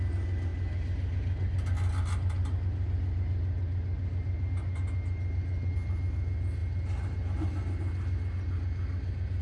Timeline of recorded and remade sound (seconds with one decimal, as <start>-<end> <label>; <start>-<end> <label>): 0.0-9.4 recorded